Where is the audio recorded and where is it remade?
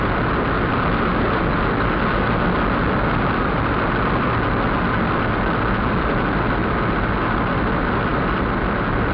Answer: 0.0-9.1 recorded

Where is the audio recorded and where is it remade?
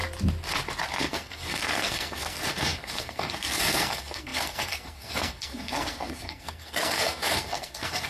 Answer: 0.0-0.9 recorded; 0.9-8.1 remade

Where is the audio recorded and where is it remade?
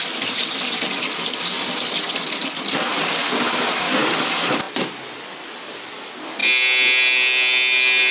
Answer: 0.0-8.1 recorded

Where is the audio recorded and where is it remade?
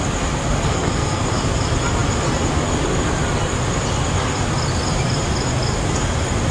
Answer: 0.0-0.5 recorded; 0.5-1.2 remade; 1.2-6.5 recorded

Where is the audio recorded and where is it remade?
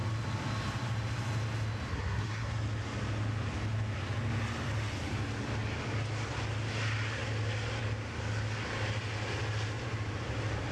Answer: 0.0-1.9 recorded; 1.9-2.5 remade; 2.5-10.7 recorded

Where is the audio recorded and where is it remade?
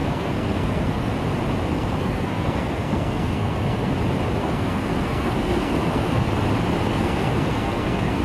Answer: 0.0-1.1 remade; 1.1-1.7 recorded; 1.7-3.9 remade; 3.9-4.4 recorded; 4.4-6.3 remade; 6.3-6.9 recorded; 6.9-8.2 remade